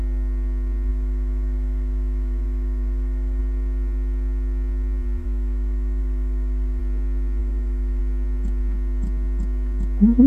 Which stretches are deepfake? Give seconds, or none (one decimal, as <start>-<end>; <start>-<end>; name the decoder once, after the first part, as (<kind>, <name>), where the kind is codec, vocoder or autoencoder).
0.9-3.4 (autoencoder, DAC-VAE); 5.2-6.8; 7.4-8.0